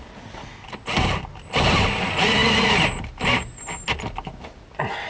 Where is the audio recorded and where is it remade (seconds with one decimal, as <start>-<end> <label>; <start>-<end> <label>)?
0.0-5.1 recorded